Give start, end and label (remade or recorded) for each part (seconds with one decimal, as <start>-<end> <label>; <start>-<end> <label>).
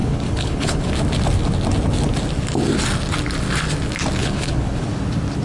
0.0-0.9 remade; 0.9-4.2 recorded; 4.2-4.9 remade; 4.9-5.4 recorded